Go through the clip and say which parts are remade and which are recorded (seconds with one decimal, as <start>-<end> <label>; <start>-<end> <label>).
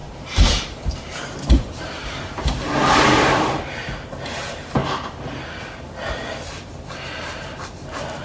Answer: 0.0-4.8 remade; 4.8-5.6 recorded; 5.6-6.0 remade; 6.0-8.2 recorded